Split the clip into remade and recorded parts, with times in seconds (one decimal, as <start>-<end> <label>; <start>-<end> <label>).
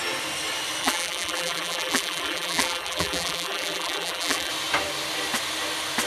0.0-0.8 recorded; 0.8-4.5 remade; 4.5-6.1 recorded